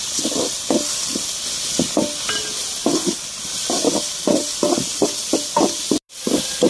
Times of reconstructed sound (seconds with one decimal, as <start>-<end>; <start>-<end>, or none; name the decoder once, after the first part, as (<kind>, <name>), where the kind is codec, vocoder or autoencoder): none

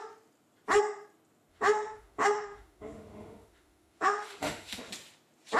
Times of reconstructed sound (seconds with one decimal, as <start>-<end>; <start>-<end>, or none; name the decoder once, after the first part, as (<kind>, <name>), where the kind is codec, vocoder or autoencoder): 1.5-4.9 (autoencoder, DAC-VAE)